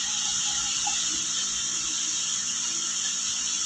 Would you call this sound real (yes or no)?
yes